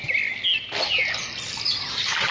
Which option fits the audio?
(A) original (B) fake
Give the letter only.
A